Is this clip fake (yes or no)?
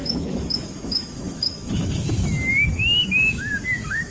yes